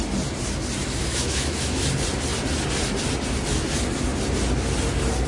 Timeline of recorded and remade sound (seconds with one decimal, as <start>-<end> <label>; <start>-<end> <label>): 0.0-1.0 recorded; 1.0-1.8 remade; 1.8-5.3 recorded